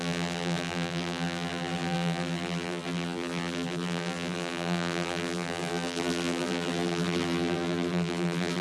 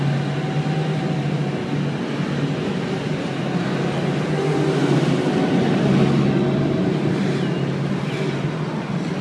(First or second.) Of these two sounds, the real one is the second